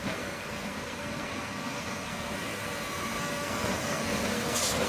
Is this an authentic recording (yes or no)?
no